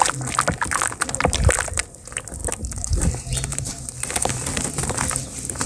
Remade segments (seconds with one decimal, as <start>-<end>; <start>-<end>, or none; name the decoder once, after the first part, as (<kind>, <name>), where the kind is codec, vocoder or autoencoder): none